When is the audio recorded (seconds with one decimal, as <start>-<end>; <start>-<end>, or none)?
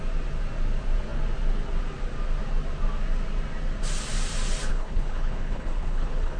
0.0-4.7